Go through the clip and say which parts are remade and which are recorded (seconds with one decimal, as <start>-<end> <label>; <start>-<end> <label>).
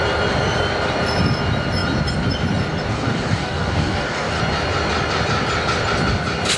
0.0-2.9 recorded; 2.9-4.4 remade; 4.4-6.6 recorded